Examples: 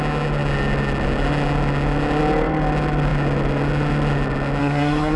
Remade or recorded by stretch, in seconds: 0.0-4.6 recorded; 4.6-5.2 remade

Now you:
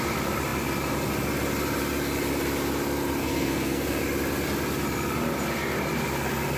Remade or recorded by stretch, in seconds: 0.0-3.2 recorded; 3.2-4.0 remade; 4.0-6.6 recorded

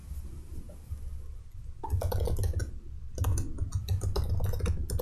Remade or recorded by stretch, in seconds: 0.0-5.0 recorded

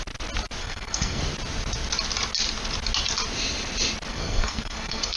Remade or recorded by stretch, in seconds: 0.0-0.6 recorded; 0.6-1.2 remade; 1.2-4.1 recorded; 4.1-5.2 remade

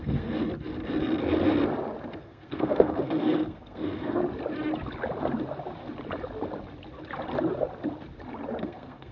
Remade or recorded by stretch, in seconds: 0.0-0.4 remade; 0.4-2.2 recorded; 2.2-4.2 remade; 4.2-8.6 recorded; 8.6-9.1 remade